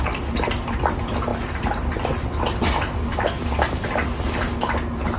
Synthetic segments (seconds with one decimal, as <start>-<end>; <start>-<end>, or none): none